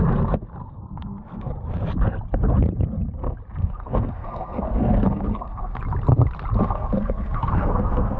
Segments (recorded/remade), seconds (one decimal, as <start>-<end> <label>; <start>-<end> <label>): 0.0-0.6 recorded; 0.6-1.5 remade; 1.5-3.6 recorded; 3.6-5.8 remade; 5.8-6.6 recorded; 6.6-8.2 remade